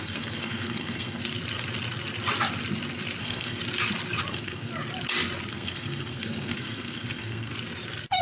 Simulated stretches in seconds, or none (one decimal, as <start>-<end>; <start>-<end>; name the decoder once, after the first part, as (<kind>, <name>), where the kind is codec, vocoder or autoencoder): 0.0-1.2 (codec, SNAC); 3.2-3.6; 4.3-4.7; 5.5-7.5